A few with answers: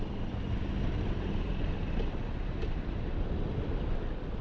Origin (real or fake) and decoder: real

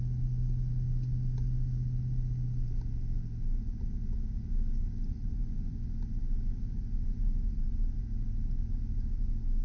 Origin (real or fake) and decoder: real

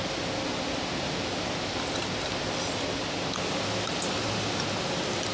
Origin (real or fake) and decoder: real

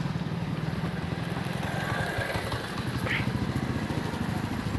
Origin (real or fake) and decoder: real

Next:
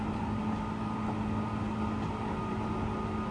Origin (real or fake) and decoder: real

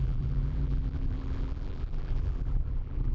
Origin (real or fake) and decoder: fake, vocoder, BigVGAN v2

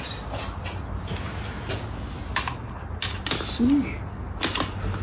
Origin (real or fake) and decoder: real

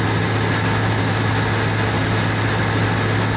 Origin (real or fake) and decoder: real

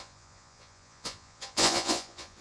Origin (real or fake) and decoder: fake, vocoder, Vocos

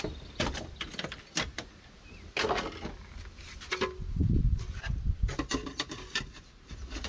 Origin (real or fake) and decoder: real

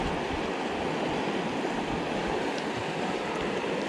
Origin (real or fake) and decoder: fake, vocoder, BigVGAN v2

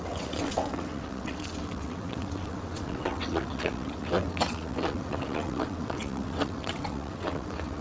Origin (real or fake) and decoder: fake, vocoder, WaveNeXt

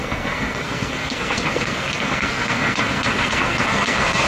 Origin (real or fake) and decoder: fake, codec, SNAC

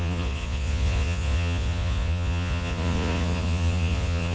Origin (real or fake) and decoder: fake, vocoder, Vocos